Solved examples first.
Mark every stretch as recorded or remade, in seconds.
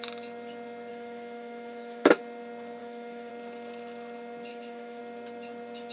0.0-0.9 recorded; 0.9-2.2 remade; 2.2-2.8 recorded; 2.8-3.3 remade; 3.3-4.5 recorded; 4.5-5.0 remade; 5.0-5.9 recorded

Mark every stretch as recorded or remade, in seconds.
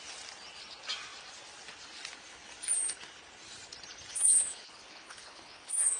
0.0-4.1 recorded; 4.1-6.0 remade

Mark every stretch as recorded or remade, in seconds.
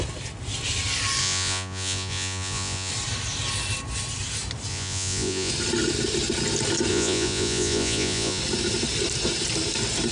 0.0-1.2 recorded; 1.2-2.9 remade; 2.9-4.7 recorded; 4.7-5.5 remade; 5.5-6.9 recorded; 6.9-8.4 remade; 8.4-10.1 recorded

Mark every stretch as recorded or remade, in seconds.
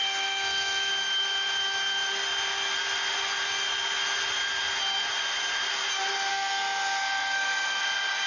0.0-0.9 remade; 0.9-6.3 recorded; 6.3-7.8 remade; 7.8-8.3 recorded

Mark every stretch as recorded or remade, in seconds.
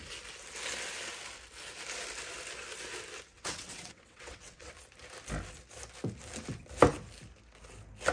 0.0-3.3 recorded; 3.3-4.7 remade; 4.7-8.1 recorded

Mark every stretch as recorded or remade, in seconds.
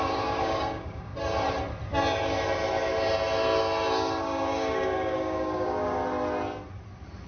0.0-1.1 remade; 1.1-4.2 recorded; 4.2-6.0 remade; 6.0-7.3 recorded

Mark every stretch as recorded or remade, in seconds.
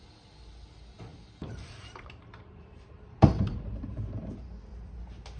0.0-1.1 recorded; 1.1-4.3 remade; 4.3-5.4 recorded